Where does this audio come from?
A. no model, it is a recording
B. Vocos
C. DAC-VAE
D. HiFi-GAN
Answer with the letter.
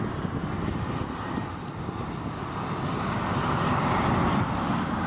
A